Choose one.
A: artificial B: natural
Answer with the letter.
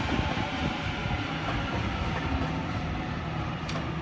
B